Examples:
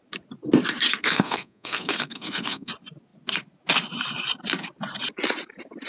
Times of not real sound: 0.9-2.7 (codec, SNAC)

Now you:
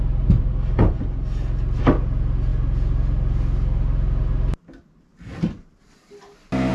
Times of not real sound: none